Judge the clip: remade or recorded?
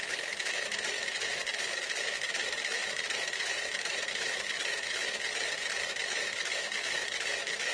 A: remade